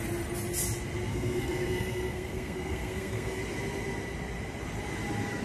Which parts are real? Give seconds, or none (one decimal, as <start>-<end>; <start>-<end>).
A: 0.0-1.1; 3.4-5.4